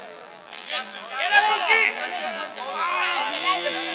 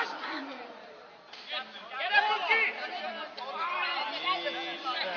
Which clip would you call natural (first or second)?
second